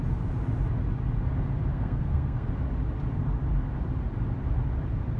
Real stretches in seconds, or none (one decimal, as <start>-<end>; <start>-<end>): 0.0-1.7; 2.5-5.2